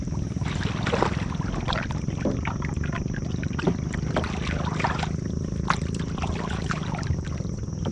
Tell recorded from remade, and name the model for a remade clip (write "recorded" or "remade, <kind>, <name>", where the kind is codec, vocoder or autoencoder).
recorded